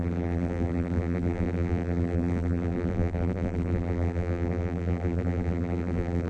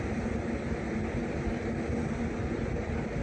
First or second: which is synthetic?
first